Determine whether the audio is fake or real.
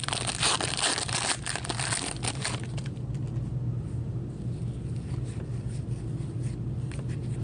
real